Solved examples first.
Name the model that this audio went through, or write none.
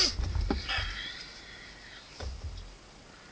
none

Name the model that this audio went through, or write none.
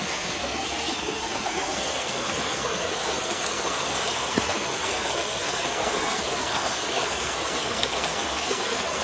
codec, SNAC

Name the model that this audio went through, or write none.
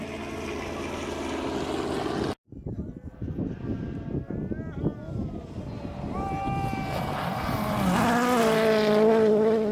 none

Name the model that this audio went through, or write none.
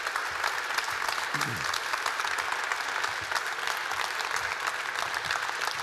none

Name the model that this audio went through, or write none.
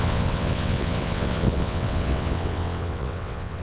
vocoder, WaveNeXt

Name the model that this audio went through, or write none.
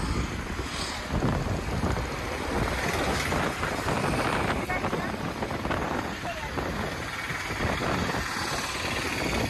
none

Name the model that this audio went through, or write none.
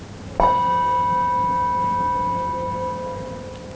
none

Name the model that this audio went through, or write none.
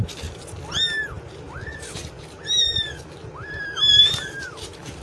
vocoder, BigVGAN v2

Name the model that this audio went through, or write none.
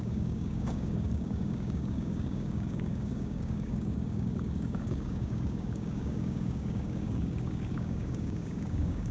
codec, DAC